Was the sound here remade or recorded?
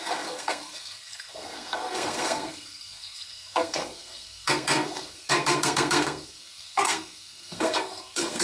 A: remade